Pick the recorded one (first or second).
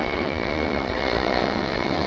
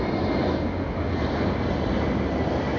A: second